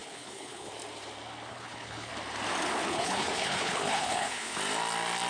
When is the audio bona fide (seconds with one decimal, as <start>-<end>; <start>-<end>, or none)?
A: 0.7-1.5; 2.1-2.9; 4.6-5.3